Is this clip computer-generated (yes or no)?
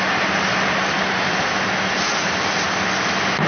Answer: no